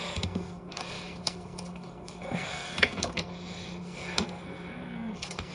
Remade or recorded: remade